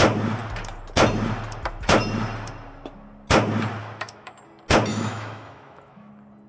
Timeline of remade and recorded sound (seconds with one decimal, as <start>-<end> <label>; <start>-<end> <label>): 0.0-3.8 recorded; 3.8-4.4 remade; 4.4-4.9 recorded; 4.9-6.1 remade; 6.1-6.5 recorded